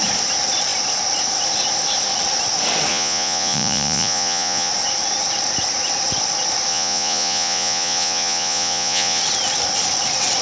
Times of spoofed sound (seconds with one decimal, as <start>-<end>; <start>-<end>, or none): 2.9-4.7; 6.7-9.2